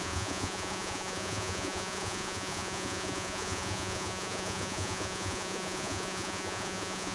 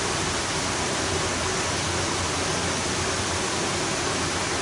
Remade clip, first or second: first